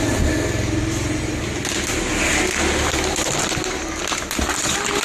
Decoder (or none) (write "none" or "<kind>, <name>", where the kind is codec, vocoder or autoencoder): none